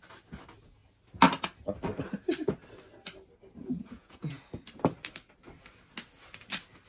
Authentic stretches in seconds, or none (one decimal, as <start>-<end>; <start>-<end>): 0.0-3.6; 4.4-6.9